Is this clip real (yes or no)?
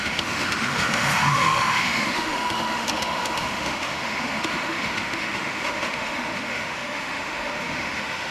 no